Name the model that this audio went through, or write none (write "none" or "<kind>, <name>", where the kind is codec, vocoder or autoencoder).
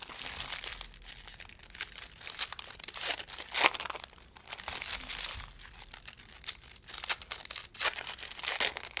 none